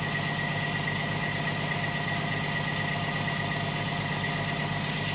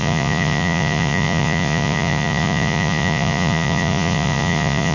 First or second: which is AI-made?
second